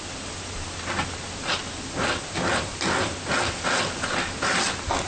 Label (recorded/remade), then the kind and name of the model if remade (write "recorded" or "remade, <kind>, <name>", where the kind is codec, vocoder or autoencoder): recorded